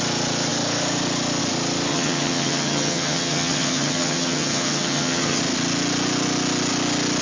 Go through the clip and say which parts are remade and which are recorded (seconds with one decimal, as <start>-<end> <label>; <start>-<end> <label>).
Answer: 0.0-1.9 recorded; 1.9-5.4 remade; 5.4-7.2 recorded